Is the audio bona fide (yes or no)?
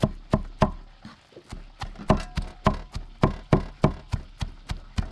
yes